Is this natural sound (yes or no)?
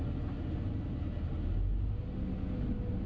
yes